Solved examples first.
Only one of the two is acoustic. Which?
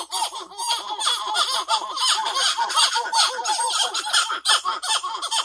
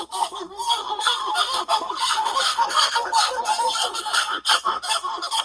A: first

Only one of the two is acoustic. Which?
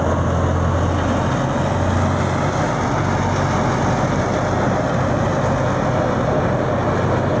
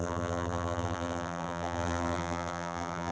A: first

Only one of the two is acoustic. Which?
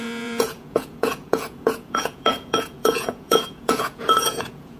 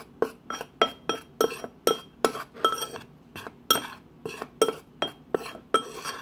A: second